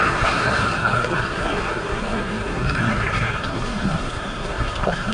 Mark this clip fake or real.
fake